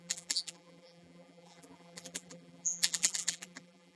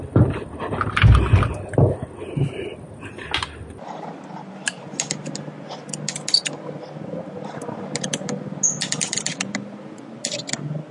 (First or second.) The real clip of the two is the second